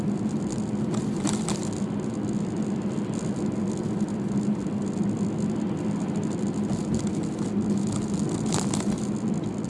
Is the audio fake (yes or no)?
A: no